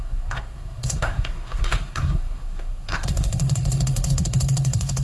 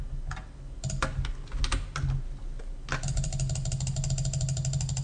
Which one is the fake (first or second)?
first